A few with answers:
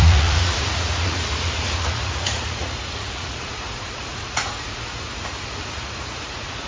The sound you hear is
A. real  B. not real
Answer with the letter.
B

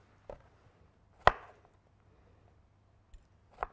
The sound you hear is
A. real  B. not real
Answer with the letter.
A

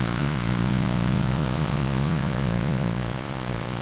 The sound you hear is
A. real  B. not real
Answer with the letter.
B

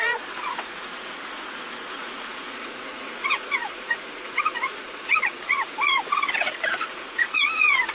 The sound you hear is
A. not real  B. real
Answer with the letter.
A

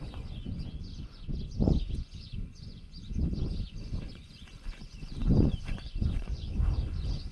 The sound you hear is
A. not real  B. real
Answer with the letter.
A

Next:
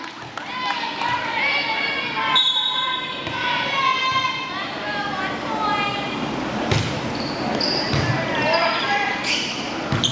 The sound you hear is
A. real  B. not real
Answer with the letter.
A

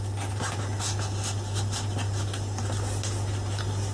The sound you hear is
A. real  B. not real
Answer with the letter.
A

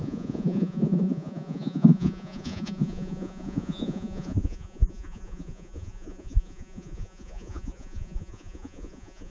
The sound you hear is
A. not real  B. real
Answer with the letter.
A